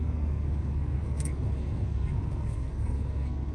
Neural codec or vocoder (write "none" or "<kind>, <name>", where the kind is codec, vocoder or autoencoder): codec, SNAC